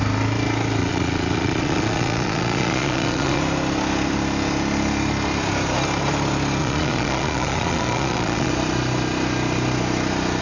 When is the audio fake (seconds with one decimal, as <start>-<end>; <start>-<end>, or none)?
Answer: 0.8-3.4; 6.6-8.5